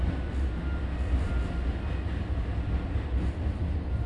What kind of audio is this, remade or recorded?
recorded